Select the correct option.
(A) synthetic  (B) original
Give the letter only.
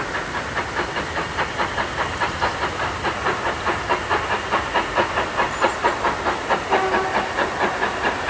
B